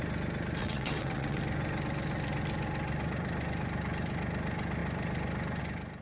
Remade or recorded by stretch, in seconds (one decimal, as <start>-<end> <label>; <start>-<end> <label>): 0.0-0.6 recorded; 0.6-1.4 remade; 1.4-6.0 recorded